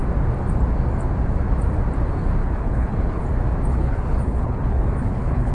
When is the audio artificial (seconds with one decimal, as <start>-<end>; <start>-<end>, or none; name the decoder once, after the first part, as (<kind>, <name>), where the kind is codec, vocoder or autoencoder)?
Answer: 2.4-3.2 (codec, HILCodec); 3.7-5.5